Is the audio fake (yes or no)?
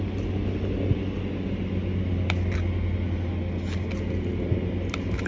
no